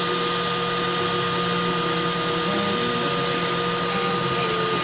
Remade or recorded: recorded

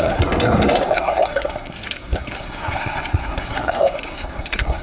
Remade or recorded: remade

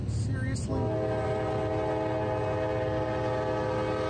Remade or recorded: recorded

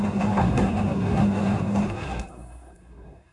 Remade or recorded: remade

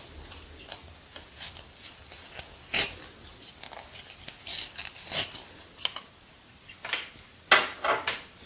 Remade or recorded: recorded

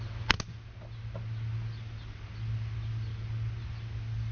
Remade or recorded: recorded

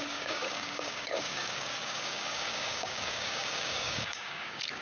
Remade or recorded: remade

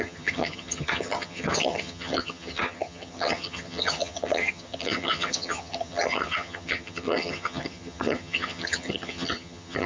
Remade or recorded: remade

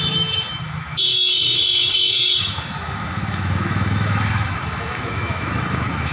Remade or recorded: remade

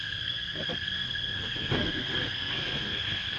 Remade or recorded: remade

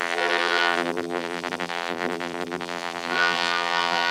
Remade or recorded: remade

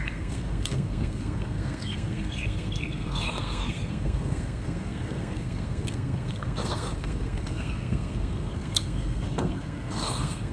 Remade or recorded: remade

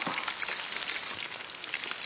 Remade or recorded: recorded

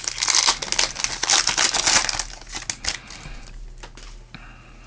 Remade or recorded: recorded